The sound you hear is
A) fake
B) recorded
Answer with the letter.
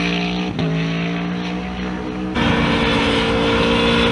B